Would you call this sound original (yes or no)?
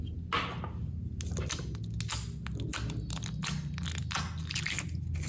yes